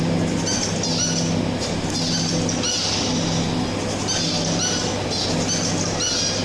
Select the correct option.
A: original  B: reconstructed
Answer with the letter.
A